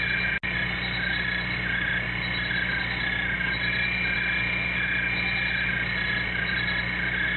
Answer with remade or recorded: recorded